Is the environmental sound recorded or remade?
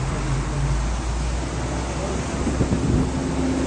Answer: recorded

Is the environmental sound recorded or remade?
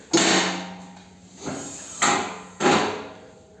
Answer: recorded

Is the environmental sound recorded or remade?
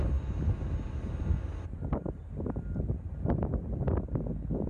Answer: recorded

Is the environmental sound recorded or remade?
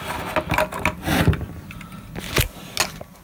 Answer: recorded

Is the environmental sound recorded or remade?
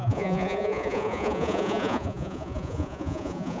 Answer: remade